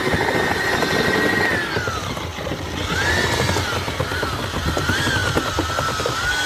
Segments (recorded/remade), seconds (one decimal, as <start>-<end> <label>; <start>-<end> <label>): 0.0-6.5 recorded